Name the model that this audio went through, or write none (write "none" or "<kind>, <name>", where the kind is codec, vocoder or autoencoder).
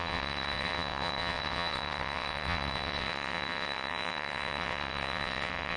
vocoder, WaveNeXt